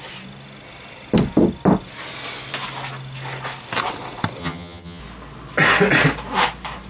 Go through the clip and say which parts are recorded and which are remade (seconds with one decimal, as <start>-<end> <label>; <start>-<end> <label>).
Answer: 0.0-4.4 recorded; 4.4-5.0 remade; 5.0-6.9 recorded